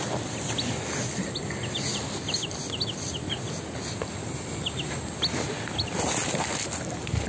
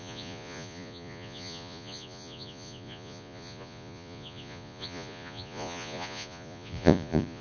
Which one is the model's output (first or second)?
second